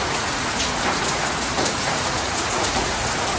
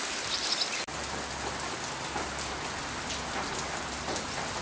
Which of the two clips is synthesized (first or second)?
first